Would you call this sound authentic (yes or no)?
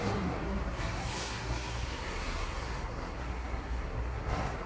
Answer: no